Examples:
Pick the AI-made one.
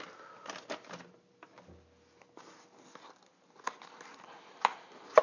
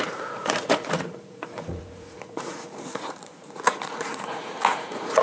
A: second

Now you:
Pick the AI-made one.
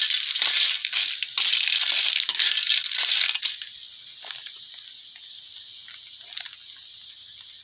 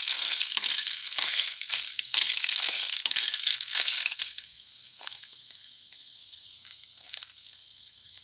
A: second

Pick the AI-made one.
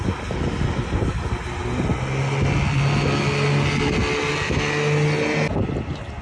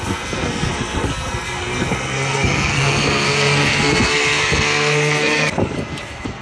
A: second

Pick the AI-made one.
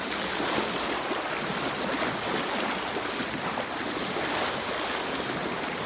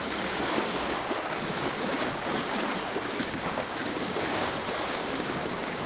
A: second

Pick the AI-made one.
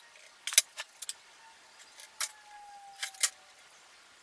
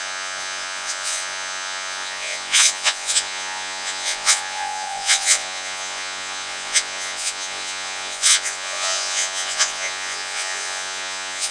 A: second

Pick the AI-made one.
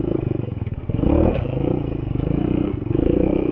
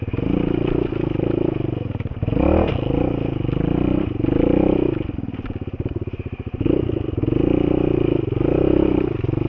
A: first